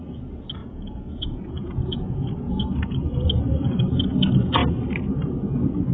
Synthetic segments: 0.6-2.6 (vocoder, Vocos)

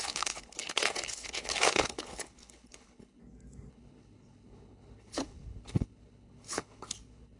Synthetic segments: 0.0-3.2 (codec, HILCodec); 3.7-7.4

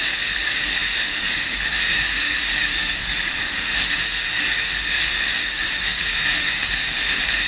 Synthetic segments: 0.0-7.5 (autoencoder, DAC-VAE)